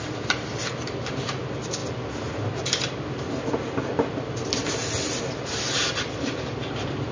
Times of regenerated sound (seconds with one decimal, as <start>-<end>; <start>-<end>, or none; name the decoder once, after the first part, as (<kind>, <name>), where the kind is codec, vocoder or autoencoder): none